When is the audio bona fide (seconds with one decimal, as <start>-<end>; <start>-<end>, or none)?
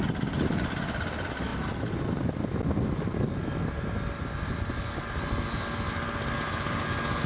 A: 0.0-7.3